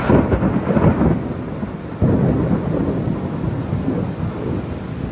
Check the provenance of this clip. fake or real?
real